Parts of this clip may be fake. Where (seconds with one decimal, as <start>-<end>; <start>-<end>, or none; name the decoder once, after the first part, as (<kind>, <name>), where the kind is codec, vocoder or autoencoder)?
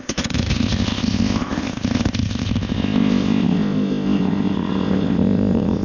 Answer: 0.0-5.8 (codec, ZipCodec)